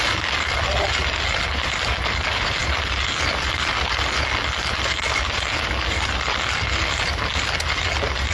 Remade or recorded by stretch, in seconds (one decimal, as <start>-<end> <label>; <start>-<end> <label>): 0.0-8.3 recorded